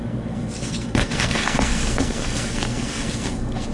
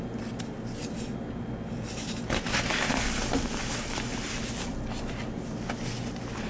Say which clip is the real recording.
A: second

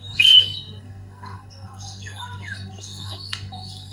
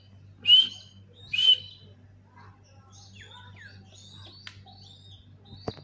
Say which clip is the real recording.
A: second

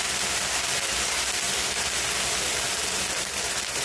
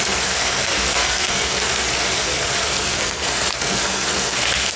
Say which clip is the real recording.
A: first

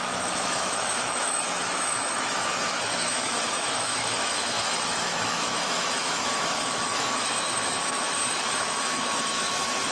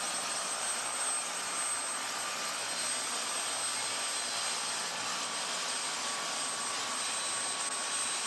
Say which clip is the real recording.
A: second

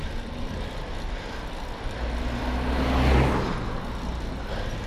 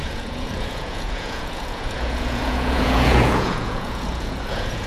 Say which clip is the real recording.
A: first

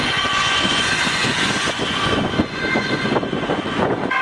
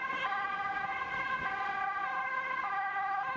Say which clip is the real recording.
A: second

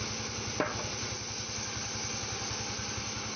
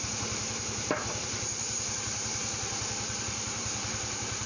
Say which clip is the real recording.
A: first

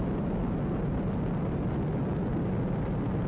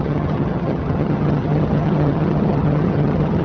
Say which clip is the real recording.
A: first